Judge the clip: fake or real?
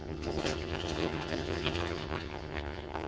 fake